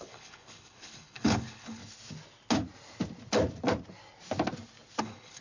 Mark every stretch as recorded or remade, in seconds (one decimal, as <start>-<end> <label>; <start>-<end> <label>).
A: 0.0-1.8 remade; 1.8-5.0 recorded; 5.0-5.4 remade